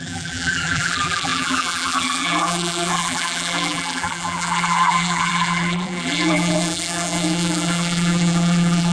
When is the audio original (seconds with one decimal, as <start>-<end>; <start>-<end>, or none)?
none